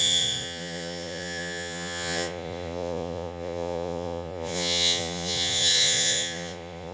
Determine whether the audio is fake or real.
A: fake